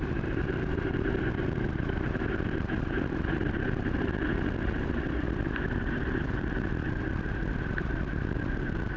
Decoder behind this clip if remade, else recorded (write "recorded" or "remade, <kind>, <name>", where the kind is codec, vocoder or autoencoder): remade, vocoder, BigVGAN v2